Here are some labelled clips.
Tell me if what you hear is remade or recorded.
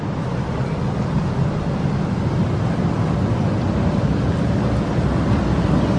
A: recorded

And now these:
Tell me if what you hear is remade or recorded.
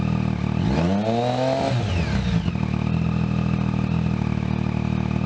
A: recorded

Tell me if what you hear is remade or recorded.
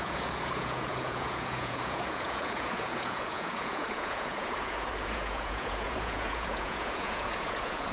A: remade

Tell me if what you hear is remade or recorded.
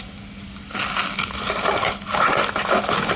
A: recorded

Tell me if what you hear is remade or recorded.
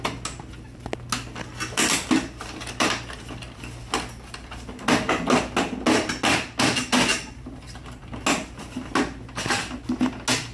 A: recorded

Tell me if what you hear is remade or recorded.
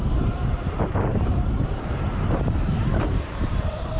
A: remade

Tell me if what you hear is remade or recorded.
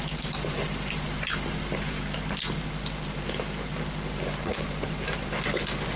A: recorded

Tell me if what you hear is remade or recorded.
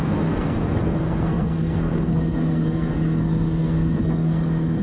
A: remade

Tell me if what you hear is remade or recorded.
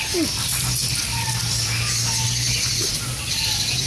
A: recorded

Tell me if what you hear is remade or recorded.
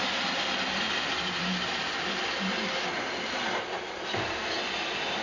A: recorded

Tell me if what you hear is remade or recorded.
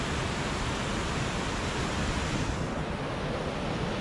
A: recorded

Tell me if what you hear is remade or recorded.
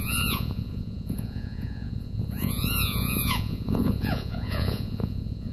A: remade